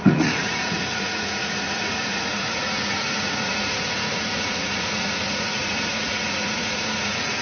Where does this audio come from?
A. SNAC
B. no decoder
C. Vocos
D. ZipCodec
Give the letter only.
C